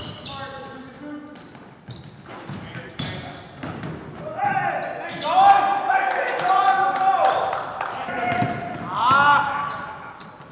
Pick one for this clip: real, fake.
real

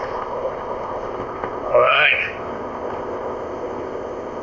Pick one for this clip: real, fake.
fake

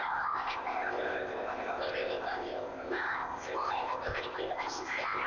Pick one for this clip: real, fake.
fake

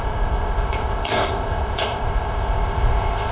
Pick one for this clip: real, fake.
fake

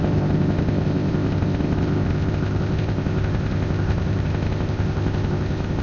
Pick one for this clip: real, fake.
fake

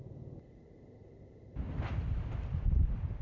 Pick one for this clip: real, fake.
real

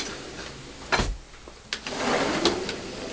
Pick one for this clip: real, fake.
real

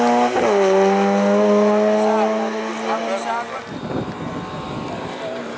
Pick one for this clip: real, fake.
real